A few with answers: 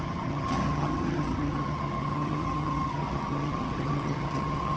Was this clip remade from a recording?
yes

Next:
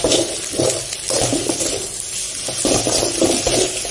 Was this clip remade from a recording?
no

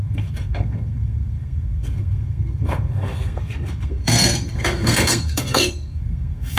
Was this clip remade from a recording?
yes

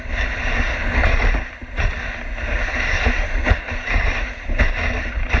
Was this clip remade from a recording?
no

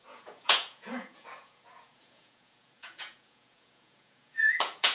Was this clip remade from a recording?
yes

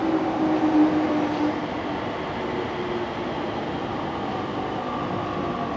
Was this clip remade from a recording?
no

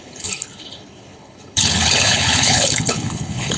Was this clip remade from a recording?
yes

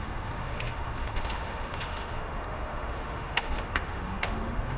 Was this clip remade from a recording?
yes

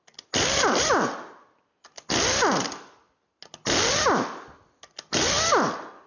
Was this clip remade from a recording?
no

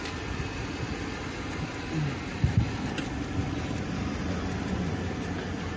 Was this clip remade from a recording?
no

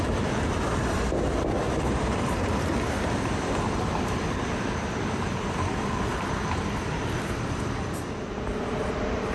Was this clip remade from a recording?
yes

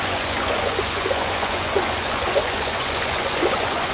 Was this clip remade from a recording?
yes